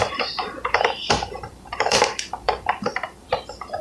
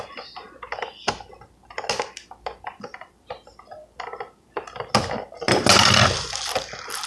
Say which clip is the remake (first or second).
first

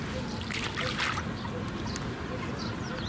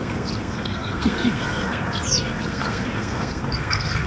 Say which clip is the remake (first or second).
second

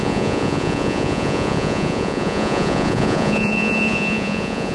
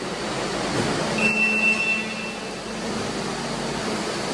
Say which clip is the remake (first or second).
first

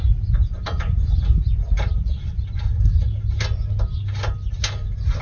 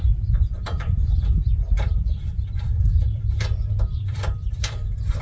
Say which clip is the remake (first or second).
second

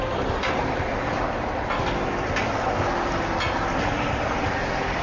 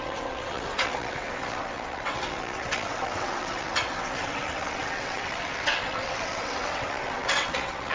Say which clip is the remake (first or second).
second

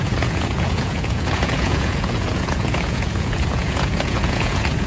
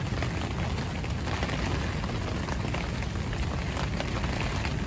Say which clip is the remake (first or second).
first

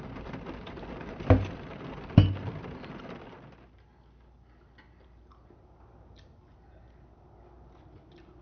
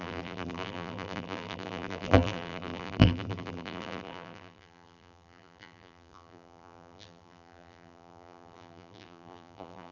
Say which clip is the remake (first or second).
second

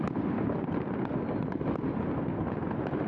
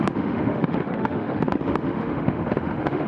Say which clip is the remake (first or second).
second